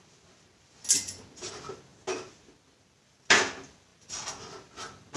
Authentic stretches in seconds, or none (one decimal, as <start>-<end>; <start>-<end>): 0.0-5.2